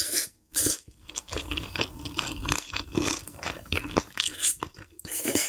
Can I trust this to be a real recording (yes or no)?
no